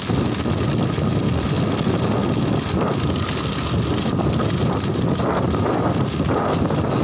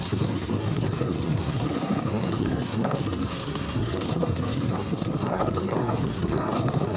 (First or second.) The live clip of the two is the first